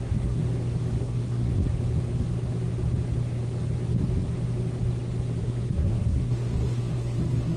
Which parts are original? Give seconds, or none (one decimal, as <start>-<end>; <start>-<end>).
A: 0.4-1.0; 1.5-5.4